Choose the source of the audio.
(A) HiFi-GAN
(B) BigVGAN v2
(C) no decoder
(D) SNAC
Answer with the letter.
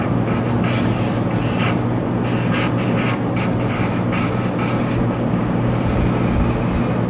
C